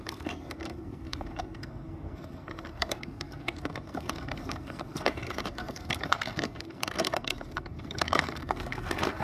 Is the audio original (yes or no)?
no